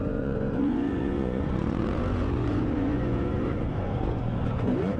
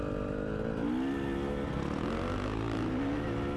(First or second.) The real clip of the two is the second